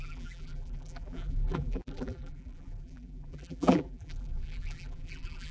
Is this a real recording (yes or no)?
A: no